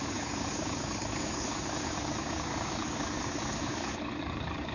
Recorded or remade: remade